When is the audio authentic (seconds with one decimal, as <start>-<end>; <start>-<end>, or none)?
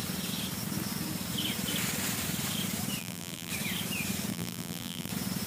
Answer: 0.0-3.0; 3.5-4.3; 5.1-5.5